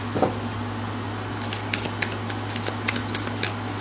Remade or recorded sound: recorded